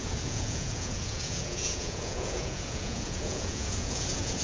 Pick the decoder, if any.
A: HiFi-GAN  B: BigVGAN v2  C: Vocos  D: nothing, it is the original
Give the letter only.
C